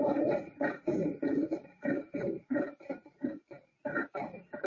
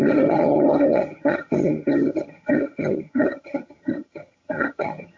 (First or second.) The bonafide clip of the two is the first